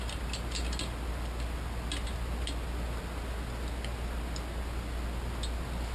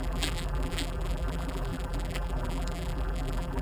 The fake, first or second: second